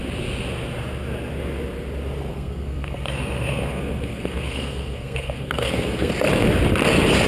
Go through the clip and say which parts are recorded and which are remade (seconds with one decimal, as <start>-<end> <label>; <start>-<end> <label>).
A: 0.0-2.3 recorded; 2.3-6.1 remade; 6.1-7.3 recorded